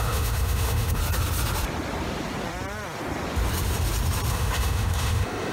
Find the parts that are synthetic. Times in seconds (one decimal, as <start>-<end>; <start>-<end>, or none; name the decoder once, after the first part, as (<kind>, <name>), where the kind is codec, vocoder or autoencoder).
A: 0.0-1.0 (autoencoder, DAC-VAE); 4.3-5.5